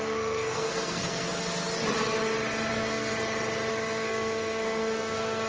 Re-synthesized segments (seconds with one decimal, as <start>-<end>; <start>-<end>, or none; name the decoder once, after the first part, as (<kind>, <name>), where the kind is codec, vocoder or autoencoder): 0.0-1.3 (codec, SNAC); 2.7-3.1; 3.7-5.5